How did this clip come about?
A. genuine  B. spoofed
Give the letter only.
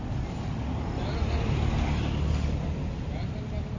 A